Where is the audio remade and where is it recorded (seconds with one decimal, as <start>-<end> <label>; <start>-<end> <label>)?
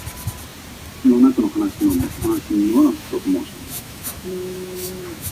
0.0-2.7 recorded; 2.7-5.3 remade